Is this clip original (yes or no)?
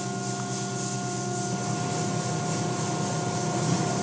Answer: yes